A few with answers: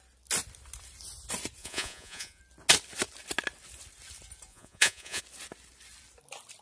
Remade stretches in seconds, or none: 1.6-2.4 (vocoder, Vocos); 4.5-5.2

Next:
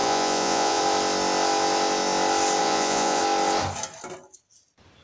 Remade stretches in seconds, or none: 0.0-0.8 (vocoder, Vocos); 2.6-3.2

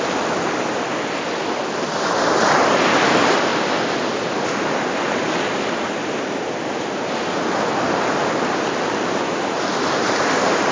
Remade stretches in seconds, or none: none

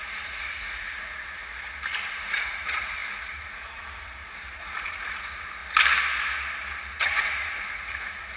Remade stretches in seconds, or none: 0.0-1.5 (vocoder, Vocos); 2.0-5.6; 6.9-8.4